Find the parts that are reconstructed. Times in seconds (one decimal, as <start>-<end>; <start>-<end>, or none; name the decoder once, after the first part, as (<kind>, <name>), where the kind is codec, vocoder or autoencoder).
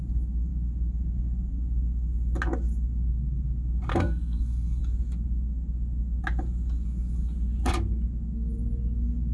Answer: 3.9-4.8 (codec, SNAC)